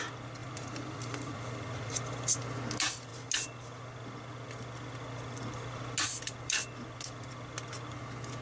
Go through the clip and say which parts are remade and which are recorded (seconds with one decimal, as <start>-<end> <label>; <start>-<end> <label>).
0.0-0.4 recorded; 0.4-1.9 remade; 1.9-8.4 recorded